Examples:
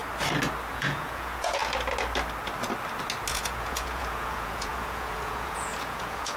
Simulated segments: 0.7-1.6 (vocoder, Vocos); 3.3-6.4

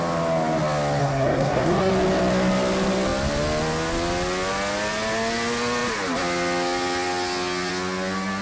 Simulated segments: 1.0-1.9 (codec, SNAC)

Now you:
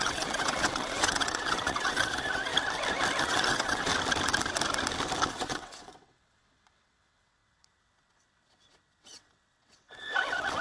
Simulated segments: 0.0-2.5 (vocoder, WaveNeXt); 3.2-3.9; 5.3-10.6

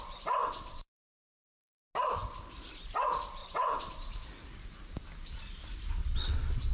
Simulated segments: 0.4-1.8 (vocoder, WaveNeXt); 3.4-3.9; 6.0-6.7